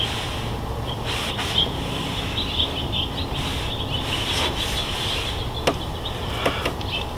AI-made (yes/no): no